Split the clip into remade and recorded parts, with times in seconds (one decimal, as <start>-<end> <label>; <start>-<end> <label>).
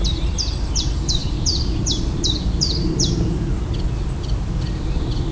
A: 0.0-5.3 recorded